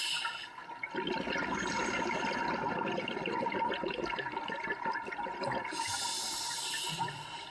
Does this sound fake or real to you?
real